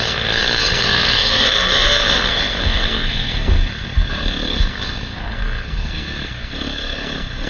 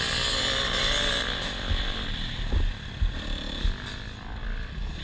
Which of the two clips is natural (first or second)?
second